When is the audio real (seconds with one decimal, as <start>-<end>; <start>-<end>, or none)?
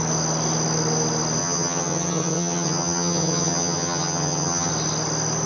0.0-1.4; 4.7-5.5